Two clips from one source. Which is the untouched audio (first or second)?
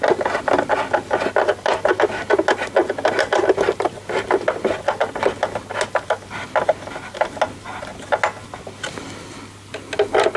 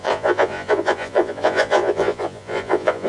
first